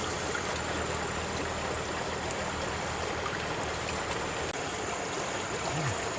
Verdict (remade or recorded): recorded